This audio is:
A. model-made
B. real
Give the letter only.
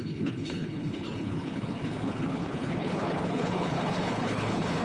A